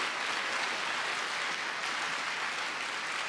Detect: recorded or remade recorded